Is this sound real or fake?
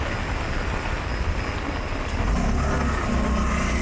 real